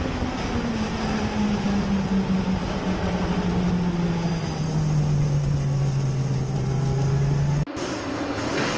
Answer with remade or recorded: recorded